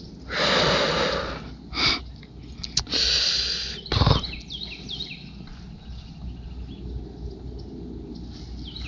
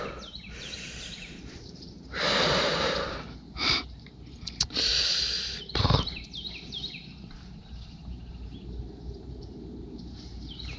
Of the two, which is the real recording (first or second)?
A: first